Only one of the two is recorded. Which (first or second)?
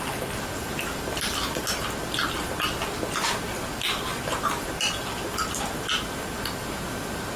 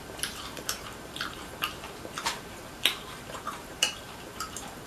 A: first